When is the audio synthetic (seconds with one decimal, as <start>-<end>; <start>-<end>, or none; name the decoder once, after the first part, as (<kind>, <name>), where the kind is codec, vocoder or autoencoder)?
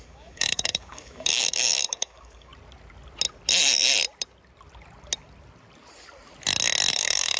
0.0-2.5 (codec, DAC); 6.9-7.4